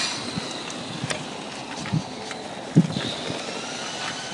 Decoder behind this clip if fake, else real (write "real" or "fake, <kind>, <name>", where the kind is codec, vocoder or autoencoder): real